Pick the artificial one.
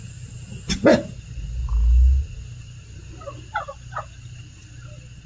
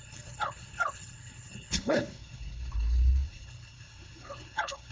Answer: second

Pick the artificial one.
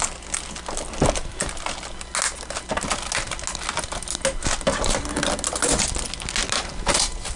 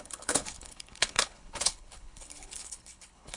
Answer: second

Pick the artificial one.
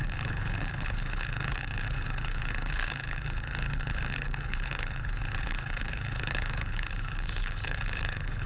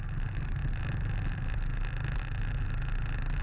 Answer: first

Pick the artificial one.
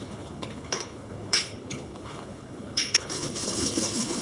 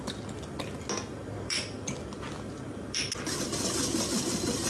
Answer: first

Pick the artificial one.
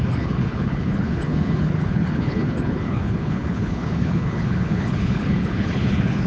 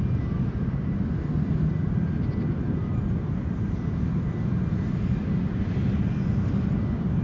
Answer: first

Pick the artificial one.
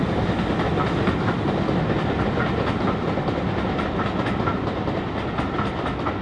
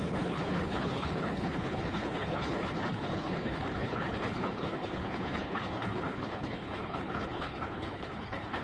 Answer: second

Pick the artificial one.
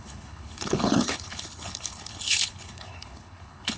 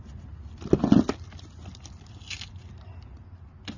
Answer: first